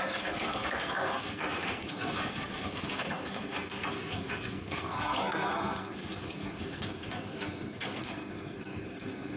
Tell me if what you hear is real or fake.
fake